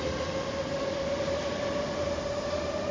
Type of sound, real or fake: real